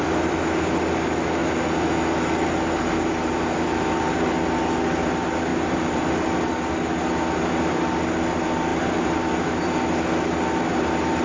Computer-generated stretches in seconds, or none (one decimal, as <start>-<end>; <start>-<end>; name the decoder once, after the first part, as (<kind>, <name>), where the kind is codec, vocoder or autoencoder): 5.5-6.0 (vocoder, BigVGAN v2); 8.7-9.7